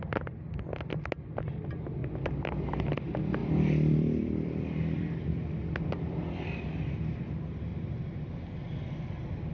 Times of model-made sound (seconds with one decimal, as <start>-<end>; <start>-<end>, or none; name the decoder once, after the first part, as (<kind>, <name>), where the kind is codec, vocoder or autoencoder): 2.0-3.0 (vocoder, BigVGAN v2); 3.4-6.1; 7.7-8.4